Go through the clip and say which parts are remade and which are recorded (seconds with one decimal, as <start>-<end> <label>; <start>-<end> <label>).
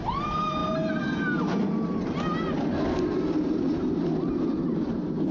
0.0-5.3 recorded